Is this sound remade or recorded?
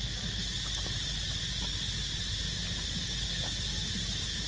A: recorded